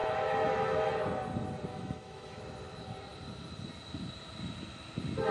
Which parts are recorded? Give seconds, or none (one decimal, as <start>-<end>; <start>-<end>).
0.9-1.7; 2.4-5.3